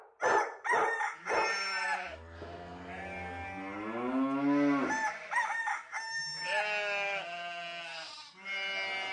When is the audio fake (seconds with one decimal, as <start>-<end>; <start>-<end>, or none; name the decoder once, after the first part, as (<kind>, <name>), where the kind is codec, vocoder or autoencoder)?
none

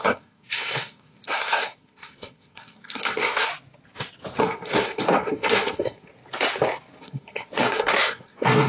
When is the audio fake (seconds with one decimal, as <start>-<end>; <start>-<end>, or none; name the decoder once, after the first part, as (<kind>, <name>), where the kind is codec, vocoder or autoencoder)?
0.0-3.5 (codec, SNAC); 4.4-6.1; 7.0-8.7

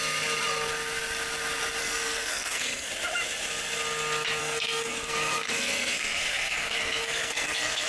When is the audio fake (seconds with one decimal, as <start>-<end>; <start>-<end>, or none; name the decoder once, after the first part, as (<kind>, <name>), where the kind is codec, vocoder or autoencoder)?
1.8-2.9 (codec, SNAC); 4.4-7.9